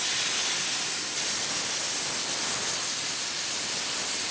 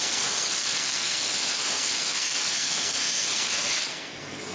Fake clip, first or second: second